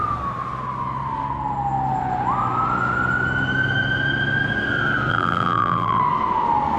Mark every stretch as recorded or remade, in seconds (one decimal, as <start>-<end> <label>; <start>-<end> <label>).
0.0-5.1 recorded; 5.1-6.0 remade; 6.0-6.8 recorded